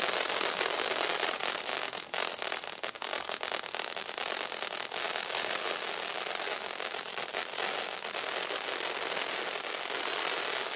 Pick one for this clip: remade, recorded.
recorded